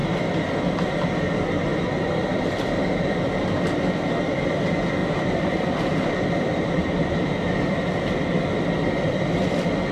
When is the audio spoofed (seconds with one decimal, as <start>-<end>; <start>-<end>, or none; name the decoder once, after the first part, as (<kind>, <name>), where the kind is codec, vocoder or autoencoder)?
0.0-0.6 (vocoder, BigVGAN v2); 1.7-3.8; 5.0-9.9